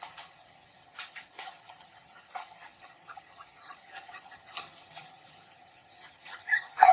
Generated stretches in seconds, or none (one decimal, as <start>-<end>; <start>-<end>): 0.0-6.9